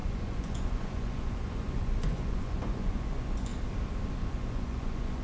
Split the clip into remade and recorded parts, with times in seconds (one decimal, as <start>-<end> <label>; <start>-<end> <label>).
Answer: 0.0-3.5 remade; 3.5-4.3 recorded; 4.3-5.2 remade